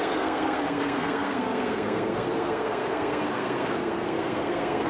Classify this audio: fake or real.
fake